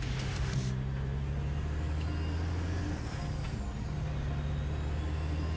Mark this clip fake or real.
real